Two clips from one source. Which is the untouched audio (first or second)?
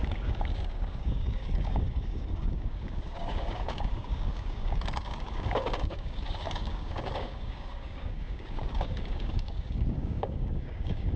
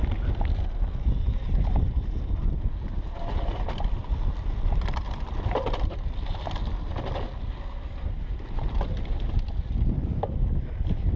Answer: second